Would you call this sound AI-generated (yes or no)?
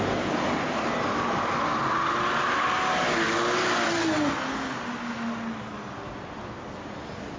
no